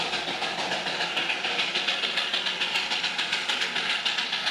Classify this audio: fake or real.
real